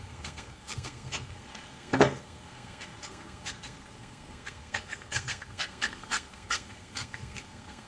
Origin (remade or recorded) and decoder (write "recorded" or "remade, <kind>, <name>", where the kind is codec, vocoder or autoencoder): remade, codec, SNAC